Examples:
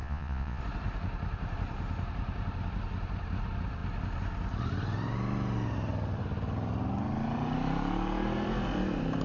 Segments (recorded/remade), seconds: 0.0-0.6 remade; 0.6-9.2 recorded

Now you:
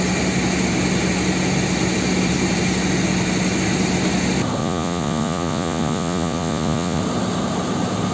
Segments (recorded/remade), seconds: 0.0-4.6 recorded; 4.6-7.0 remade; 7.0-8.1 recorded

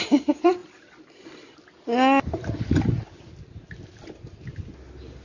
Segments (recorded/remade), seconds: 0.0-5.2 recorded

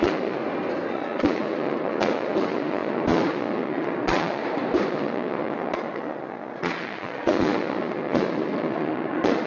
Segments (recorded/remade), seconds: 0.0-0.4 remade; 0.4-0.9 recorded; 0.9-4.4 remade; 4.4-4.9 recorded; 4.9-9.5 remade

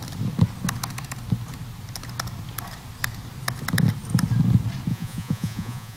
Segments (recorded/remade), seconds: 0.0-4.9 recorded; 4.9-6.0 remade

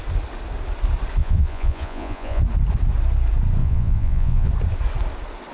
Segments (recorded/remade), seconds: 0.0-1.2 recorded; 1.2-2.4 remade; 2.4-3.6 recorded; 3.6-4.5 remade; 4.5-5.5 recorded

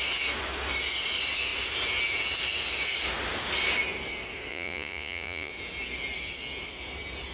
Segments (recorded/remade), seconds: 0.0-4.5 recorded; 4.5-5.5 remade; 5.5-7.3 recorded